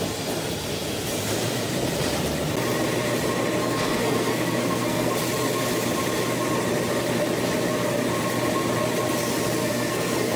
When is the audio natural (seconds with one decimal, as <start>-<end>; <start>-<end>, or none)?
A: 0.0-3.6; 5.1-9.6